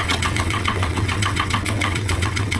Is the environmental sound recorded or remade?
remade